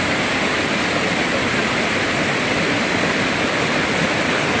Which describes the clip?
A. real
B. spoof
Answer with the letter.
A